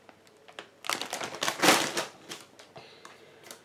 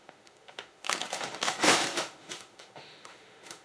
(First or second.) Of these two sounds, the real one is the first